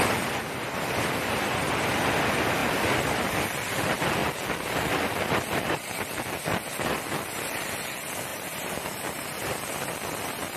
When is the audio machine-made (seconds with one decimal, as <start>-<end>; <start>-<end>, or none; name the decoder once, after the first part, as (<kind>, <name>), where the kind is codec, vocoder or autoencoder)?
8.3-9.5 (vocoder, BigVGAN v2)